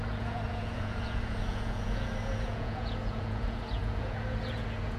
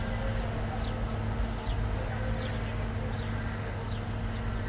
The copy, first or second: first